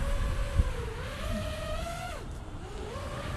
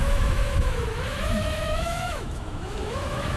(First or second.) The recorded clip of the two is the first